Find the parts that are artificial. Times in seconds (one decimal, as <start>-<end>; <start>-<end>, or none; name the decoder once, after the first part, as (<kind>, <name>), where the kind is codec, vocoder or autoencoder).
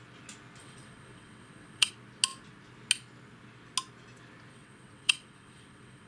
0.6-1.9 (vocoder, WaveNeXt); 4.5-6.1